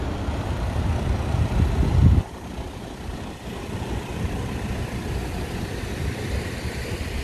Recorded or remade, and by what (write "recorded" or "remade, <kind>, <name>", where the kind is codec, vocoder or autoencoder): remade, vocoder, BigVGAN v2